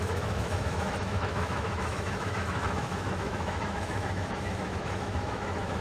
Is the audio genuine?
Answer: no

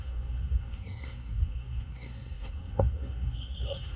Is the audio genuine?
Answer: no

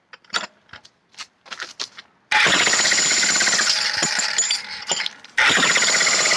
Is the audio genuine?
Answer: yes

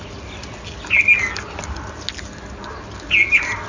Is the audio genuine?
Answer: yes